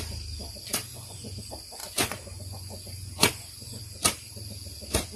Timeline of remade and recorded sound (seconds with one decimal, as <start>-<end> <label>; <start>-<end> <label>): 0.0-0.9 recorded; 0.9-1.4 remade; 1.4-1.8 recorded; 1.8-3.8 remade; 3.8-5.2 recorded